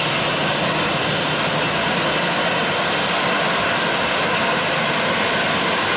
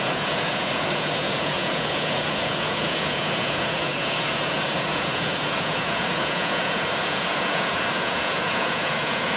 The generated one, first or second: second